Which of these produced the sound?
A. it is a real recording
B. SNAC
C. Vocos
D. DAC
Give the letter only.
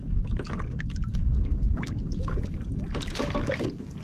D